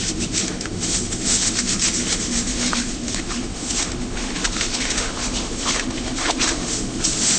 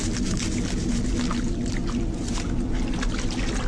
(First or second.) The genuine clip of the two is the second